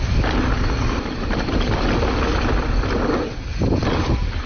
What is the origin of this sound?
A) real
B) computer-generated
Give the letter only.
A